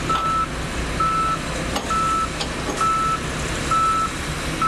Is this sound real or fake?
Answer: real